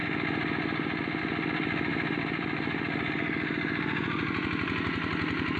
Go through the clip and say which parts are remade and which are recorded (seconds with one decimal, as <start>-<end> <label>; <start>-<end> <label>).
0.0-1.9 recorded; 1.9-3.1 remade; 3.1-5.6 recorded